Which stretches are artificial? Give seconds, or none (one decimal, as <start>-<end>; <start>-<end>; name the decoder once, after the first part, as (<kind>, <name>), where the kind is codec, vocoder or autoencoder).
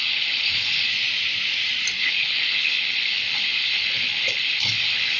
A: 0.0-0.9 (codec, HILCodec); 2.0-5.2